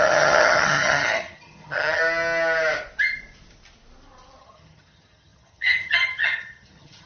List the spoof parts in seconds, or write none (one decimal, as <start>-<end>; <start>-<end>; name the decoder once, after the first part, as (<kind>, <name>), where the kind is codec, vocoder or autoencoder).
0.0-2.0 (vocoder, HiFi-GAN); 4.4-7.1